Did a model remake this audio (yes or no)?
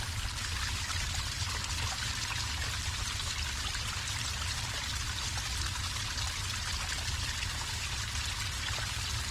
no